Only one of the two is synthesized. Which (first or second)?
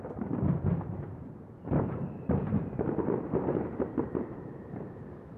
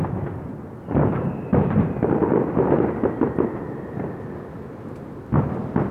first